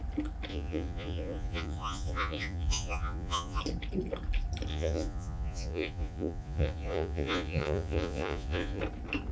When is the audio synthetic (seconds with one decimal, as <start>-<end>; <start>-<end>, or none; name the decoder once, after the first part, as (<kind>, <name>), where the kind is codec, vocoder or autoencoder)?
0.5-3.6 (vocoder, Vocos); 4.7-8.8